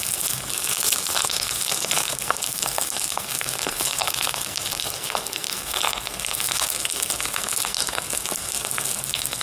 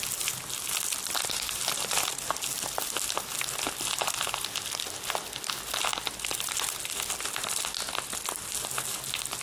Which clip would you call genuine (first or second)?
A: second